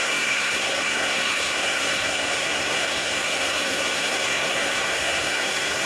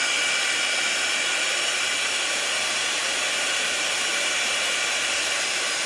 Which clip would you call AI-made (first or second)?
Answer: first